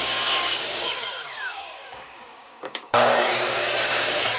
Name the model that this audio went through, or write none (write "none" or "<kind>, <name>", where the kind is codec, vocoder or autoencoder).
codec, DAC